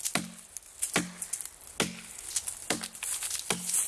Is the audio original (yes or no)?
yes